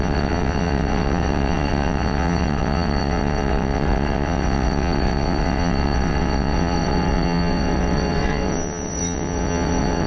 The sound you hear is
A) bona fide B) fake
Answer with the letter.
B